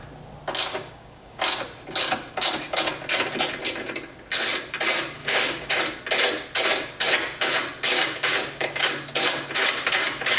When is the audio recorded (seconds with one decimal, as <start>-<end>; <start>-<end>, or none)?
0.0-0.7; 1.4-5.2; 5.7-7.9; 8.9-10.4